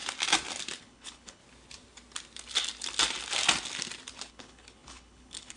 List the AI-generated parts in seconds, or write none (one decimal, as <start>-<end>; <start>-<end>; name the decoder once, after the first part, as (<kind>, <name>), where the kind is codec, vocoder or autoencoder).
0.8-1.4 (codec, HILCodec); 4.3-5.6

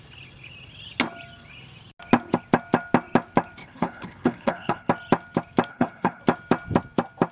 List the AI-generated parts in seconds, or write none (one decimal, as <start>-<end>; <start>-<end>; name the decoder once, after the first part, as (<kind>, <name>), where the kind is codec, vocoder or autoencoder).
3.6-4.9 (codec, HILCodec); 5.7-6.2

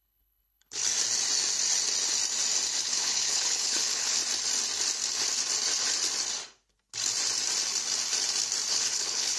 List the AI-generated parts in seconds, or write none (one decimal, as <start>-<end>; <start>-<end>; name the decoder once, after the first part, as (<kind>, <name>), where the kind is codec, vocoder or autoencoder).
0.0-0.8 (codec, HILCodec); 2.8-4.2; 8.7-9.4

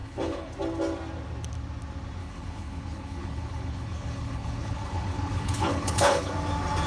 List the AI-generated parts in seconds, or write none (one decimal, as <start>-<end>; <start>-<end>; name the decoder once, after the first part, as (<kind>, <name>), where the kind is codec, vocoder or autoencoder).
0.0-0.5 (codec, HILCodec); 2.2-6.3

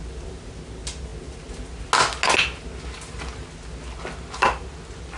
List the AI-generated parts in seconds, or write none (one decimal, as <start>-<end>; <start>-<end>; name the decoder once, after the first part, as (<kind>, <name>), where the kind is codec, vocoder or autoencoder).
none

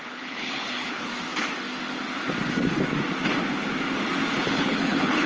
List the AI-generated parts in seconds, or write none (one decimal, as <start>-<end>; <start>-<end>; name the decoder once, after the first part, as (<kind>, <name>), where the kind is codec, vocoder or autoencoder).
0.0-1.1 (codec, HILCodec); 4.3-5.3

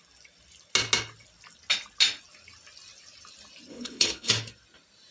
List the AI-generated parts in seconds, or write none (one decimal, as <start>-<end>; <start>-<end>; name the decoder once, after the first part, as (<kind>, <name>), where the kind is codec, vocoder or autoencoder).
3.7-4.3 (codec, HILCodec)